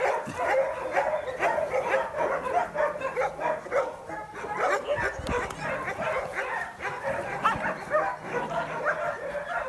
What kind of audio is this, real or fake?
real